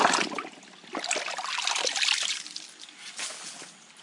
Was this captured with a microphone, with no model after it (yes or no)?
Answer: yes